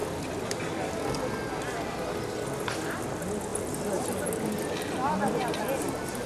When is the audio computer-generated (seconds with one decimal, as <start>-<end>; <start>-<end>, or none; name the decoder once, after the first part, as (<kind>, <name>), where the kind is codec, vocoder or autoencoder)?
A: none